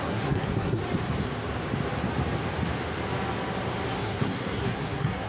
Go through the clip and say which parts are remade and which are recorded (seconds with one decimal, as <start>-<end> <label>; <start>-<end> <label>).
0.0-0.8 remade; 0.8-4.0 recorded; 4.0-5.3 remade